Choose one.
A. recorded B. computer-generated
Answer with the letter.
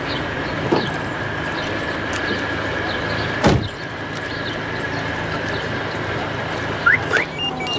A